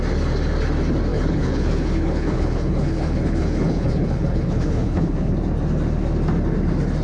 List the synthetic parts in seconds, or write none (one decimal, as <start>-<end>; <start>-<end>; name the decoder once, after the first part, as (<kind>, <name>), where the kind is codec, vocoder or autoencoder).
1.1-5.3 (codec, HILCodec)